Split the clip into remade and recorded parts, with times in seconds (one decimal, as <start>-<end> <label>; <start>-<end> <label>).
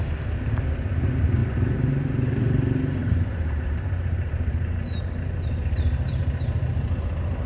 0.0-1.4 recorded; 1.4-2.4 remade; 2.4-3.0 recorded; 3.0-7.5 remade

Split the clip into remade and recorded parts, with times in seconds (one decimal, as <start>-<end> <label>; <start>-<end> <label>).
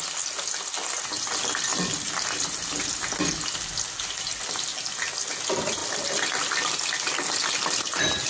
0.0-8.3 recorded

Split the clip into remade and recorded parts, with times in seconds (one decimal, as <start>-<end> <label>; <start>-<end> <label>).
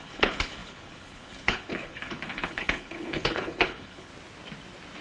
0.0-4.1 remade; 4.1-5.0 recorded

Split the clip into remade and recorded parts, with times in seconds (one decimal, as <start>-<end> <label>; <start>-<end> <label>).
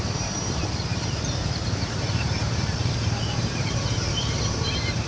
0.0-5.1 remade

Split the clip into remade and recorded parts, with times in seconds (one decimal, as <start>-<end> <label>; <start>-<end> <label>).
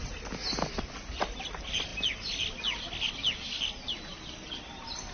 0.0-5.1 recorded